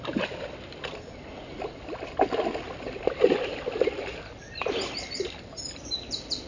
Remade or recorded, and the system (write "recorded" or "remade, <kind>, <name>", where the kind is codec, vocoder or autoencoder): recorded